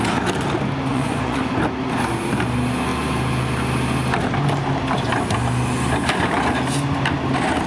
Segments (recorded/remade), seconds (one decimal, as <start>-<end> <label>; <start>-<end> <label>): 0.0-0.9 recorded; 0.9-1.4 remade; 1.4-7.7 recorded

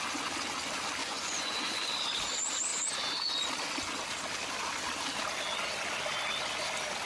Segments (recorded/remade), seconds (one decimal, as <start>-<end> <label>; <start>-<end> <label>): 0.0-1.0 recorded; 1.0-1.9 remade; 1.9-7.1 recorded

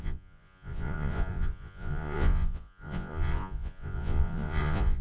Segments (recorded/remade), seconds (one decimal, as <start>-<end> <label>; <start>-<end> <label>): 0.0-5.0 remade

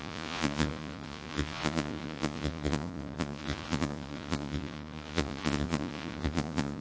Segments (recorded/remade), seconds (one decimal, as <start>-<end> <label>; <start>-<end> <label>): 0.0-6.8 remade

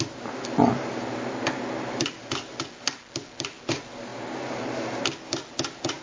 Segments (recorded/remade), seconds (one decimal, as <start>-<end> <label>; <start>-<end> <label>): 0.0-6.0 recorded